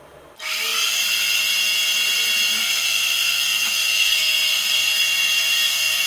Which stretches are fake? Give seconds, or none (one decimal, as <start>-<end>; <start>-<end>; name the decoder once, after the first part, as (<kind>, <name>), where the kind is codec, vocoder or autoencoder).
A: 2.6-6.1 (codec, SNAC)